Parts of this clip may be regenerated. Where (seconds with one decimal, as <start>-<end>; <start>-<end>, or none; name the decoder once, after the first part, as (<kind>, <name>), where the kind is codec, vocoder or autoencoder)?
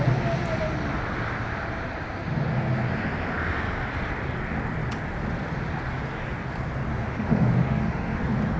6.9-8.2 (autoencoder, DAC-VAE)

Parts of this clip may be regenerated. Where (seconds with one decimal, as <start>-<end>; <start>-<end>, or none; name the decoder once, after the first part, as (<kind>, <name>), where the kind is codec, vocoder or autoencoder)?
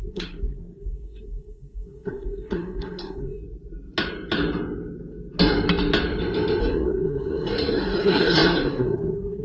0.0-3.4 (codec, SNAC); 6.6-9.4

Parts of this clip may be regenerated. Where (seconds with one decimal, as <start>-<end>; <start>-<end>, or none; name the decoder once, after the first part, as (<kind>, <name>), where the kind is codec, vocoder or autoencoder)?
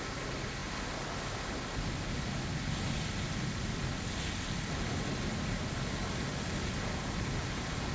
none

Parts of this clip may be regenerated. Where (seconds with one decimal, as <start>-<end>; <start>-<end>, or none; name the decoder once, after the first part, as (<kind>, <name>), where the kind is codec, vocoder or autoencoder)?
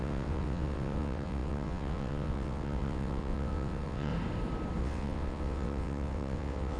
0.0-4.1 (vocoder, WaveNeXt); 4.8-6.8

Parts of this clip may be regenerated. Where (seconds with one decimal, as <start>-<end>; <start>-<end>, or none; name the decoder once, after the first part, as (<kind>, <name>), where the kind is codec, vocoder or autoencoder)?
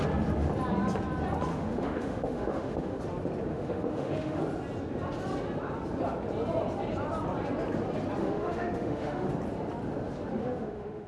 1.5-3.0 (autoencoder, DAC-VAE); 3.5-4.4; 8.2-9.3; 10.4-11.1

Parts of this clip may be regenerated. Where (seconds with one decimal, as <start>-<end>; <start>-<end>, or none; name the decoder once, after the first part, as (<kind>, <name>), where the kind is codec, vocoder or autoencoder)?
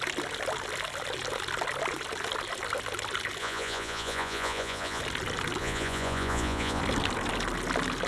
3.4-5.0 (vocoder, Vocos); 5.6-6.8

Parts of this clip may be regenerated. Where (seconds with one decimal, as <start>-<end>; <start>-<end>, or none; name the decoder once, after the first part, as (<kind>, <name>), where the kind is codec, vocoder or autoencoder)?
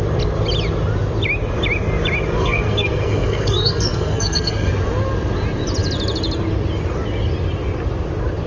2.4-4.7 (codec, SNAC)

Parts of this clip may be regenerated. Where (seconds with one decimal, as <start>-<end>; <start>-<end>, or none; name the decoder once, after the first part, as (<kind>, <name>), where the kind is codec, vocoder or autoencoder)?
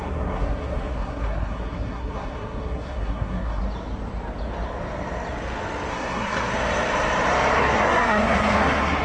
0.0-3.6 (codec, SNAC); 5.9-6.5; 7.6-9.0